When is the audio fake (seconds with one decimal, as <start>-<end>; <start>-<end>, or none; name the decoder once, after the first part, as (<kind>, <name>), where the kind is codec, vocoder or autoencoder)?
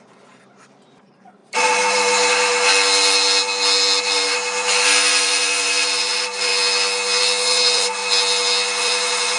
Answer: 0.0-2.7 (vocoder, BigVGAN v2); 4.0-6.5; 7.2-8.0; 8.8-9.4